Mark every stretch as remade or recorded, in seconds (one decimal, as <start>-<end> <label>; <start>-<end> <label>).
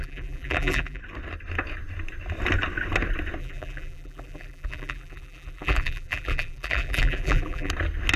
0.0-1.0 remade; 1.0-3.4 recorded; 3.4-7.7 remade; 7.7-8.2 recorded